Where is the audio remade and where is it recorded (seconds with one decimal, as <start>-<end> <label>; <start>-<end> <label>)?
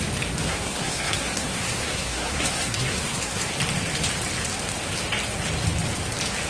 0.0-0.4 recorded; 0.4-3.5 remade; 3.5-6.5 recorded